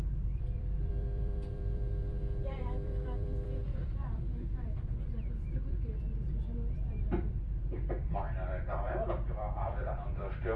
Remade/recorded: remade